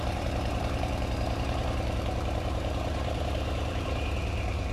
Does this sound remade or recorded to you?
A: remade